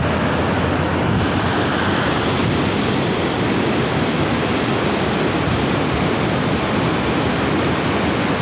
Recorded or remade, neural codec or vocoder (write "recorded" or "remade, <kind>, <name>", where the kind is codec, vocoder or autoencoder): recorded